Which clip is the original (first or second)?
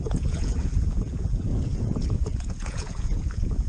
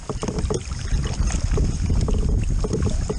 second